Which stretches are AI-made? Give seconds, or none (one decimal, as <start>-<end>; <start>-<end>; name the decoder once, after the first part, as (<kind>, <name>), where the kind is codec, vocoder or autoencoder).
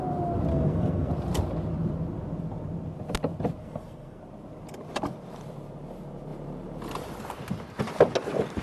0.5-1.1 (codec, SNAC); 3.6-4.2